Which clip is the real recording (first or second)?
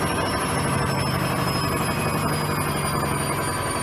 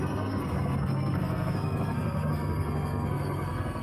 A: first